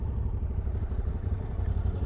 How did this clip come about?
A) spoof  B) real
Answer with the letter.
B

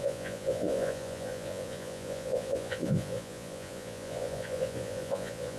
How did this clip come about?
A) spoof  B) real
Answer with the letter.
A